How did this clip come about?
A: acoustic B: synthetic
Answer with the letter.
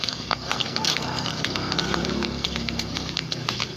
B